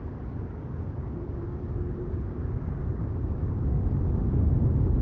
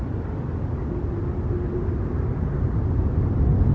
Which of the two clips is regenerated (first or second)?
first